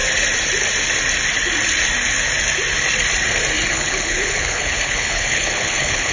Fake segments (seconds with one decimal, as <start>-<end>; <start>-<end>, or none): 3.7-6.1